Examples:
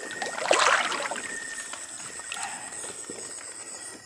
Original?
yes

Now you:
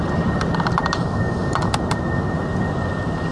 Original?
yes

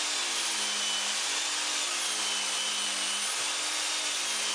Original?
yes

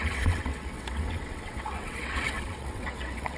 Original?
no